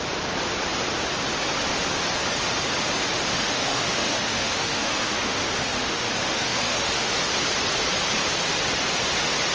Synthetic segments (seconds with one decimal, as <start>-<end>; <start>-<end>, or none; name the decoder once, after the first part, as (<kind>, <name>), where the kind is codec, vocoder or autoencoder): 3.3-7.1 (autoencoder, DAC-VAE)